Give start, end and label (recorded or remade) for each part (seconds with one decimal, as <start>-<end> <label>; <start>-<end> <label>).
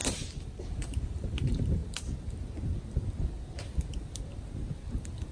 0.0-0.6 recorded; 0.6-1.8 remade; 1.8-5.3 recorded